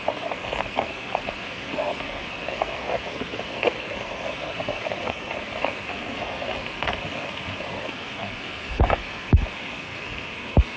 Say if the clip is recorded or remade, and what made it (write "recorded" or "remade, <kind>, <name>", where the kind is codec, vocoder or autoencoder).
remade, codec, SNAC